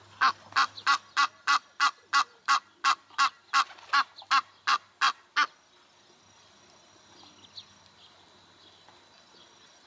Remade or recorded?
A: recorded